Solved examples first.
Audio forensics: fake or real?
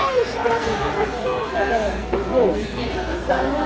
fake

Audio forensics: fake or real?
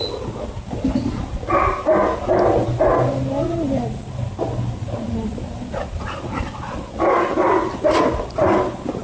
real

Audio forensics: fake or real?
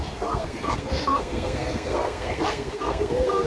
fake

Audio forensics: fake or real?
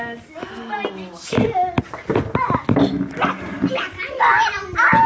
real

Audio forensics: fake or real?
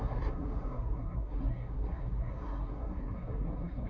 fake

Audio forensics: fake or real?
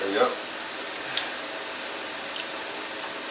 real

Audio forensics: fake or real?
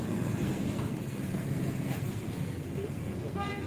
fake